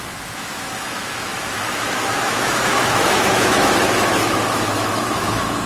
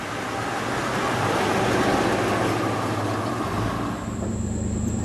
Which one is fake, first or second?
first